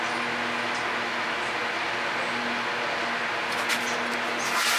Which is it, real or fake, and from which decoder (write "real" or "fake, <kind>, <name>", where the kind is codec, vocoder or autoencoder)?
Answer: real